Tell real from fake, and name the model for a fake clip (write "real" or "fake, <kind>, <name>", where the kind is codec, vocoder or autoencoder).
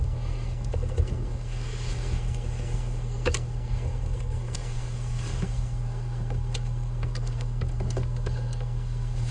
fake, codec, SNAC